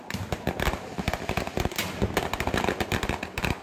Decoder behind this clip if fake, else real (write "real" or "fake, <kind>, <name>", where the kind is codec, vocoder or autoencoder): real